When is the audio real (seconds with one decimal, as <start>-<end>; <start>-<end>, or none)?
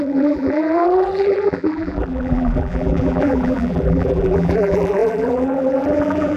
none